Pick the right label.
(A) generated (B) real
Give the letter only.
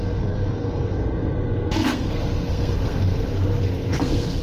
A